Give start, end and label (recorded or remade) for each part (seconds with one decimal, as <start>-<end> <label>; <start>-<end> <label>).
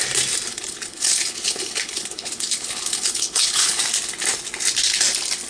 0.0-0.5 recorded; 0.5-3.8 remade; 3.8-5.5 recorded